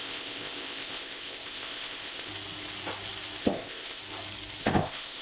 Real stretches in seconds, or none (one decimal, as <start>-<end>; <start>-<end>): 2.3-3.4; 4.0-4.6